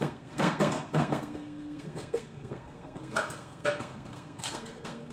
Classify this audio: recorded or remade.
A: remade